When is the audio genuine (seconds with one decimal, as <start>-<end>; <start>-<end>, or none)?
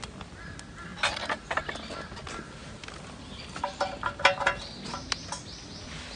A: 0.0-6.2